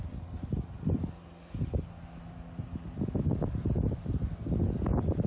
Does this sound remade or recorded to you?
recorded